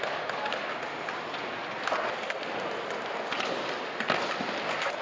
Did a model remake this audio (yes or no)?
no